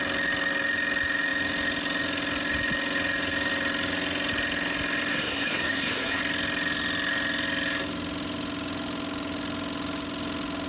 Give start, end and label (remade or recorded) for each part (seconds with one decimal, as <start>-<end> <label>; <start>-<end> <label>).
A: 0.0-5.1 recorded; 5.1-6.2 remade; 6.2-10.7 recorded